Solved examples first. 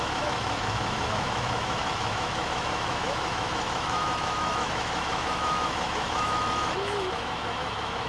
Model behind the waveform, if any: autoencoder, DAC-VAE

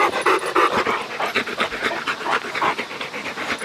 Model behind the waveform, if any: none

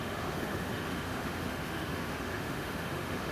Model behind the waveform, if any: autoencoder, DAC-VAE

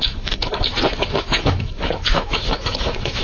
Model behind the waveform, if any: autoencoder, DAC-VAE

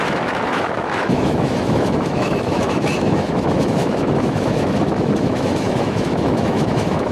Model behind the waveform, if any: autoencoder, DAC-VAE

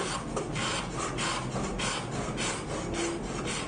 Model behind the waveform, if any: none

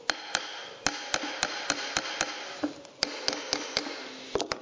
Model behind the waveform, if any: none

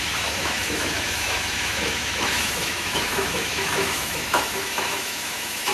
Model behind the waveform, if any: autoencoder, DAC-VAE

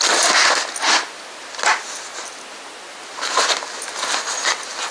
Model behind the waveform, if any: none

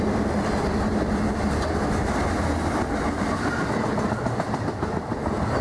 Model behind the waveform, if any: none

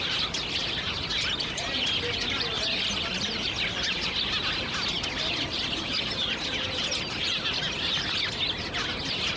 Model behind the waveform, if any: none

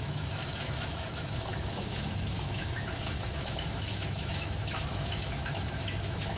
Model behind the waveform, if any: autoencoder, DAC-VAE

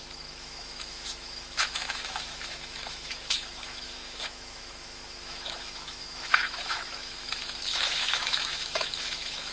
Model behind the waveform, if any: autoencoder, DAC-VAE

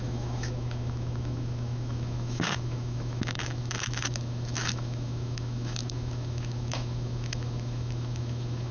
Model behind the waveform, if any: autoencoder, DAC-VAE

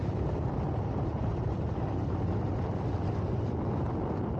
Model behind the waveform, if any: none